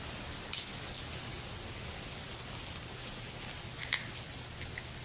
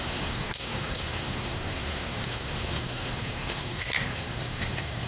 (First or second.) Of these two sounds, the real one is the first